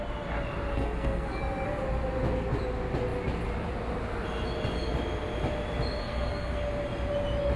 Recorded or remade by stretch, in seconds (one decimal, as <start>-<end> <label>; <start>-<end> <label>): 0.0-0.7 recorded; 0.7-1.4 remade; 1.4-6.0 recorded; 6.0-6.6 remade; 6.6-7.6 recorded